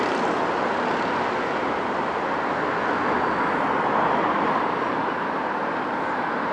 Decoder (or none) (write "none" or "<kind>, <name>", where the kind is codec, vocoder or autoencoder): none